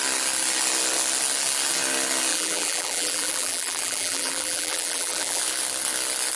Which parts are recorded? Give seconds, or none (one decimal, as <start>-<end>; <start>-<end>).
0.0-2.3; 5.4-6.4